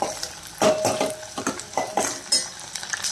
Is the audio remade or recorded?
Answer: recorded